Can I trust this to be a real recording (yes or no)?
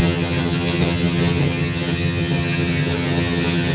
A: no